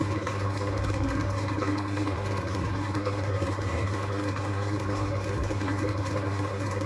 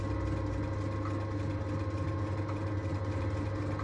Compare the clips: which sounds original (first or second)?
second